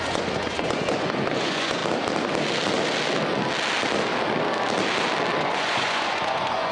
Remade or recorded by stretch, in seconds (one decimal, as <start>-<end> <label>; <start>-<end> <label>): 0.0-1.8 remade; 1.8-5.4 recorded; 5.4-6.7 remade